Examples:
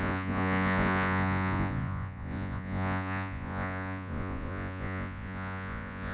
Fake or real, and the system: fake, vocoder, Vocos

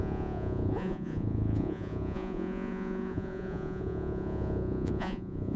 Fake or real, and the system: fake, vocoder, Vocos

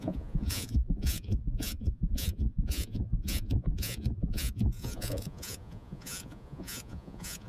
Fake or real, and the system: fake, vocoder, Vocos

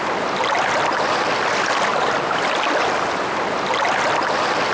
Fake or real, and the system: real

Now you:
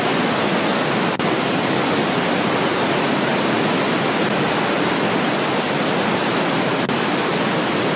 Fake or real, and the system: real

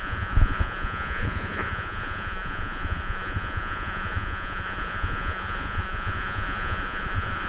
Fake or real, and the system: fake, vocoder, Vocos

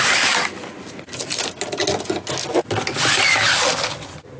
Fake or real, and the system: real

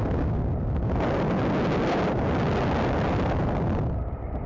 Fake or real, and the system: real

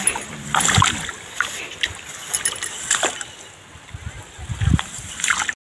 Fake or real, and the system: real